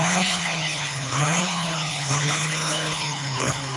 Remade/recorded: remade